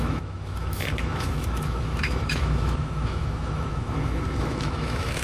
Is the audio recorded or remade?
remade